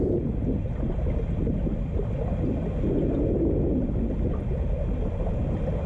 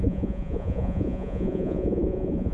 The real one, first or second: first